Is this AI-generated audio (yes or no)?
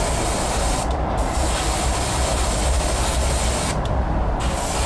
no